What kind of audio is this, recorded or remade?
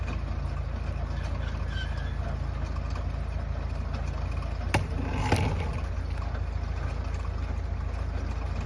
recorded